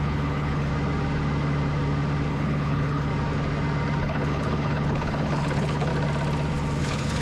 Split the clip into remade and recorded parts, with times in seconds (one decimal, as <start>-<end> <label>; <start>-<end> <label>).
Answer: 0.0-0.7 remade; 0.7-2.3 recorded; 2.3-3.1 remade; 3.1-4.0 recorded; 4.0-5.9 remade; 5.9-6.8 recorded; 6.8-7.2 remade